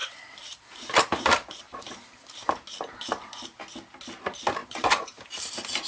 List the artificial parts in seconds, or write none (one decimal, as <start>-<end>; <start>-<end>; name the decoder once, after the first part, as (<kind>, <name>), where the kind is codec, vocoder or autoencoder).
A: 0.0-1.9 (vocoder, BigVGAN v2); 4.6-5.5